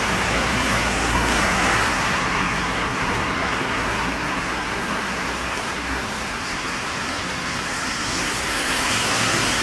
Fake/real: fake